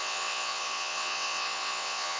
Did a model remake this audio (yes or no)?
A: yes